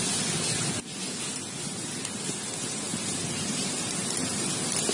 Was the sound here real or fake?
real